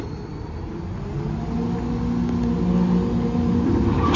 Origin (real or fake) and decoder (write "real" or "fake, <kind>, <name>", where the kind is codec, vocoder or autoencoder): real